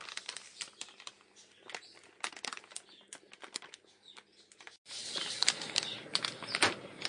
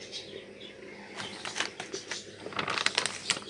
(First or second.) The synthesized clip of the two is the second